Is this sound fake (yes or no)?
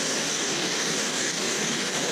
yes